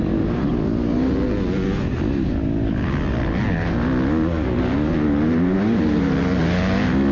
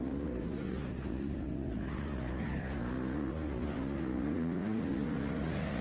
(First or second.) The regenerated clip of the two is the second